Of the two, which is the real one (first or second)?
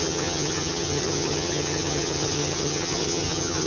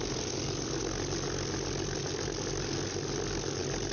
second